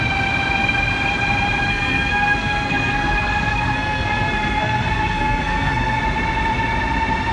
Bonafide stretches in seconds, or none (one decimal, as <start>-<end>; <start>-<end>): 0.0-1.7; 6.0-7.3